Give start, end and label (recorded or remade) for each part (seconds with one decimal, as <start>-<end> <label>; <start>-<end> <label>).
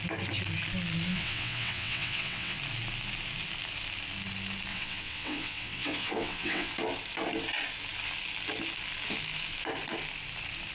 0.0-1.1 recorded; 1.1-2.6 remade; 2.6-4.7 recorded; 4.7-6.7 remade; 6.7-10.7 recorded